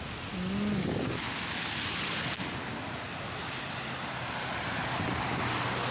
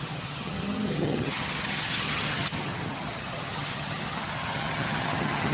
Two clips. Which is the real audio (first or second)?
first